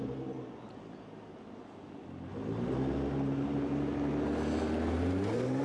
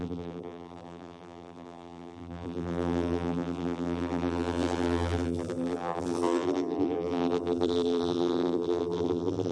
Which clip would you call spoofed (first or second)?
second